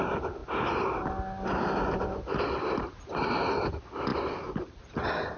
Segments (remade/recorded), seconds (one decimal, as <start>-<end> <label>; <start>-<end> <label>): 0.0-5.4 recorded